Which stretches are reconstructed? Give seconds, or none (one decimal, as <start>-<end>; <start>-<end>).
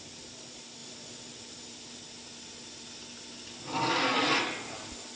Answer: none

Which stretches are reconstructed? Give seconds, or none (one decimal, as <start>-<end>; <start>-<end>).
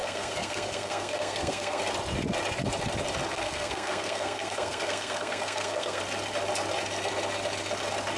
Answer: 0.0-1.8; 3.3-6.0